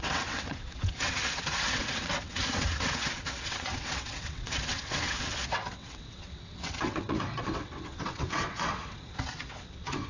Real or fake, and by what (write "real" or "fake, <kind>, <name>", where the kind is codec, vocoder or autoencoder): fake, vocoder, WaveNeXt